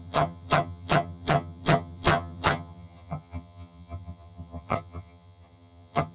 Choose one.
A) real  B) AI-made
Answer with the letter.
B